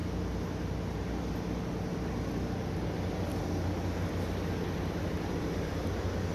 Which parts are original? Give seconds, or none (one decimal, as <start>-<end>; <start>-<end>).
0.0-6.3